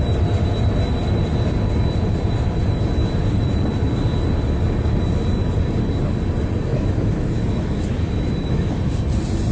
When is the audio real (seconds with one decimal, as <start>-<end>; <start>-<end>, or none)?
0.0-6.7; 8.8-9.5